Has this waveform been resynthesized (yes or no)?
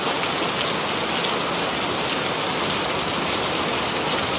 no